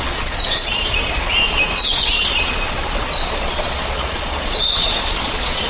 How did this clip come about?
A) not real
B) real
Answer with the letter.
A